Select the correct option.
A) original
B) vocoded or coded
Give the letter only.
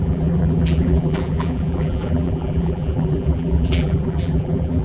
B